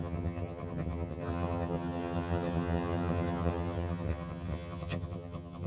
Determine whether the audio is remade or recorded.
remade